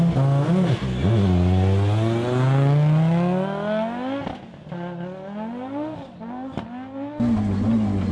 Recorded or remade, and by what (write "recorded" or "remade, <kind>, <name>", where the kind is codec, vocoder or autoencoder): recorded